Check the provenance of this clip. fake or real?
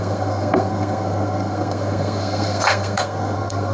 fake